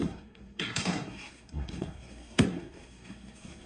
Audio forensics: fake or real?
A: fake